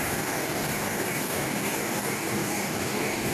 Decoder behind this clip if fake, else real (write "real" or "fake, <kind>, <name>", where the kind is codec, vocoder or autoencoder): fake, codec, DAC